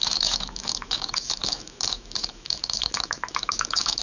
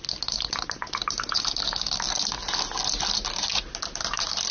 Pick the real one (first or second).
second